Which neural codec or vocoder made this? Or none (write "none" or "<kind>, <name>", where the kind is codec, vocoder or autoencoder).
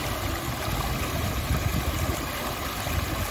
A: none